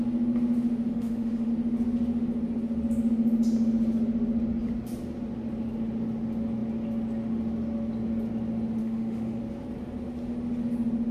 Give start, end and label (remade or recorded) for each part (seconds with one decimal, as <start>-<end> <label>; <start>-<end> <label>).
0.0-0.9 recorded; 0.9-1.5 remade; 1.5-8.8 recorded; 8.8-9.4 remade; 9.4-11.1 recorded